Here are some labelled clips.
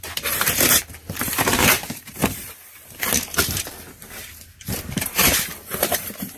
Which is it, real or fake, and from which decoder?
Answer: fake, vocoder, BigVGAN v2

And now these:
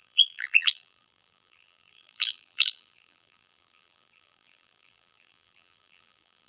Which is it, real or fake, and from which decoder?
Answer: fake, vocoder, BigVGAN v2